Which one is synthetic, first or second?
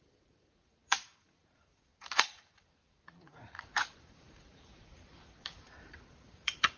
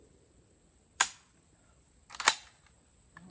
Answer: first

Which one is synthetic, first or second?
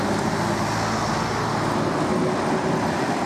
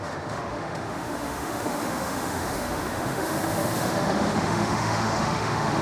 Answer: second